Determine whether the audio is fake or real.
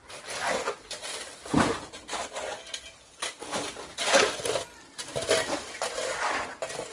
real